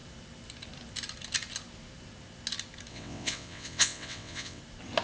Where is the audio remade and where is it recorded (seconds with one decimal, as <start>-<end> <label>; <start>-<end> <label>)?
0.0-2.9 recorded; 2.9-4.6 remade; 4.6-5.0 recorded